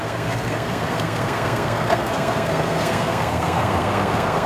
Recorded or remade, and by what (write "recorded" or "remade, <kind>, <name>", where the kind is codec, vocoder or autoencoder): remade, codec, SNAC